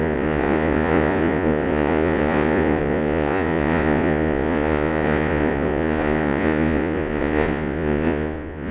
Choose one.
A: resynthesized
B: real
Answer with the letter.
A